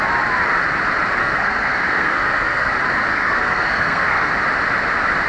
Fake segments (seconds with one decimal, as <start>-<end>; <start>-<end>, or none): 1.2-2.7; 3.1-4.3